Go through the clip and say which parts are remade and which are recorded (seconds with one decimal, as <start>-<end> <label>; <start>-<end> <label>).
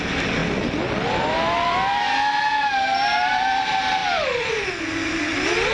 0.0-5.7 recorded